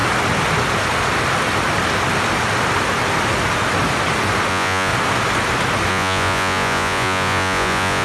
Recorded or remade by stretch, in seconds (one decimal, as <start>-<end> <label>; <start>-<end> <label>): 0.0-4.5 recorded; 4.5-4.9 remade; 4.9-5.9 recorded; 5.9-8.0 remade

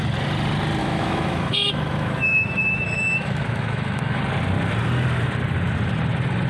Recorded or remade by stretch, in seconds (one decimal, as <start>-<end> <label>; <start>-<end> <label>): 0.0-0.8 recorded; 0.8-4.2 remade; 4.2-6.5 recorded

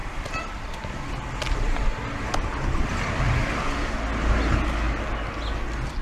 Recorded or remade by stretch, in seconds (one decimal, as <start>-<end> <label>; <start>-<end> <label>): 0.0-6.0 recorded